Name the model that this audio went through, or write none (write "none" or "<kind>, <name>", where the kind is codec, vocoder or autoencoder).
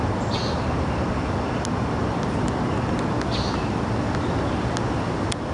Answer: none